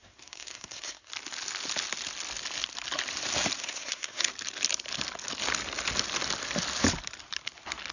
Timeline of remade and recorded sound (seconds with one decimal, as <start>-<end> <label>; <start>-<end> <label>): 0.0-1.1 remade; 1.1-3.6 recorded; 3.6-4.3 remade; 4.3-7.9 recorded